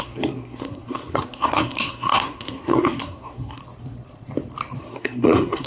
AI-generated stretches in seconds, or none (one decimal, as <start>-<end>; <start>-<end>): 0.0-3.6; 4.8-5.7